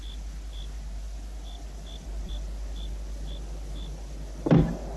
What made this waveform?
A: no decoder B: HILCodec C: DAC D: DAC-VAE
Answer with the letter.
A